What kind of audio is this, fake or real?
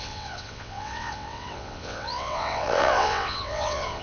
fake